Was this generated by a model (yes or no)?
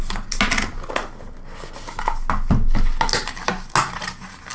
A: no